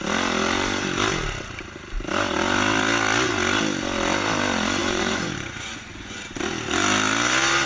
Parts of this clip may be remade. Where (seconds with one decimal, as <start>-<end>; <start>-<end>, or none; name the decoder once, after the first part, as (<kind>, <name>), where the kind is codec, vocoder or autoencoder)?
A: 4.8-6.2 (vocoder, Vocos)